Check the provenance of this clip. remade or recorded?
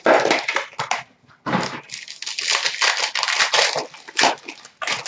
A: recorded